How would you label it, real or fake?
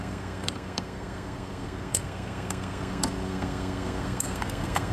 fake